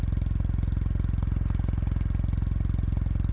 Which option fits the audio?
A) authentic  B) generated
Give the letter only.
A